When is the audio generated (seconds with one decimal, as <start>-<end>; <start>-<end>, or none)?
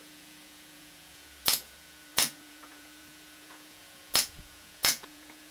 0.0-5.5